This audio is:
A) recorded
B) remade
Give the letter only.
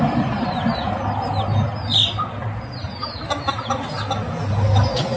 A